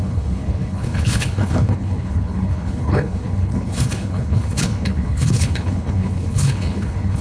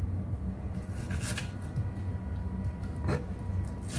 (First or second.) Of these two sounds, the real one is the second